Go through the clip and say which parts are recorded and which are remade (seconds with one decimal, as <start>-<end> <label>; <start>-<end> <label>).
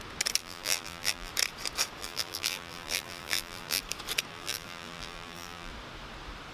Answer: 0.0-0.4 recorded; 0.4-1.3 remade; 1.3-2.0 recorded; 2.0-3.8 remade; 3.8-4.3 recorded; 4.3-5.7 remade; 5.7-6.5 recorded